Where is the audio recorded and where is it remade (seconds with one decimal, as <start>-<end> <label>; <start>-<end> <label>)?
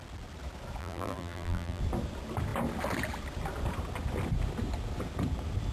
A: 0.0-0.8 recorded; 0.8-1.8 remade; 1.8-5.7 recorded